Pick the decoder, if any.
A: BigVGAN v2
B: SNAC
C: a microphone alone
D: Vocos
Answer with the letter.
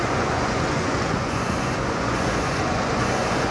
D